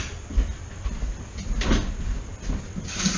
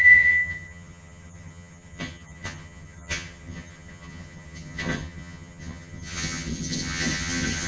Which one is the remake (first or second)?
second